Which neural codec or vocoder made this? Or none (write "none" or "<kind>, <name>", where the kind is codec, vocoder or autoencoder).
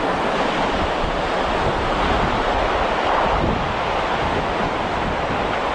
none